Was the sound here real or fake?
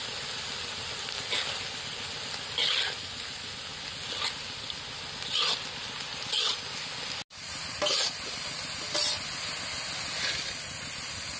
real